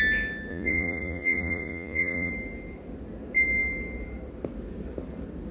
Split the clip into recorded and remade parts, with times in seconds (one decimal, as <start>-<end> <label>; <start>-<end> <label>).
0.0-0.5 recorded; 0.5-2.3 remade; 2.3-5.5 recorded